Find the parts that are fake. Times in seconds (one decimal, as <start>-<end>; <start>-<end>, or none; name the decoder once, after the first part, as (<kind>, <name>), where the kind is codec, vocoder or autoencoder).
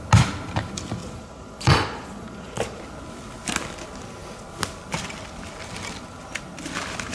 1.0-2.8 (vocoder, Vocos)